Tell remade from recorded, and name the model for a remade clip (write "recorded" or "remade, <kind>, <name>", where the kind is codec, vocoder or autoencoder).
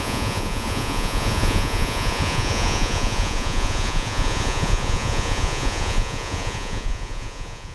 remade, vocoder, Vocos